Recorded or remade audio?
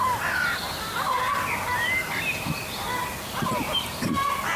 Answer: recorded